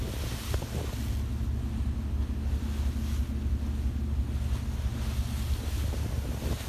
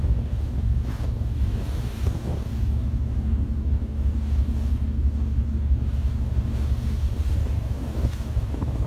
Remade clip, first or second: second